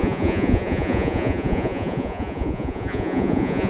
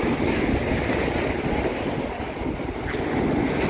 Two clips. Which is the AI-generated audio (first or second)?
first